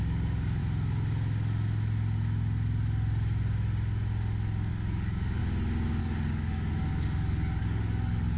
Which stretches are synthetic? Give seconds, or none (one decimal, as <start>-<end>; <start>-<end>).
0.0-0.6; 4.7-5.4; 6.0-8.4